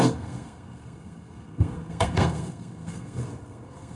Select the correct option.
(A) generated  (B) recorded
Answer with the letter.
A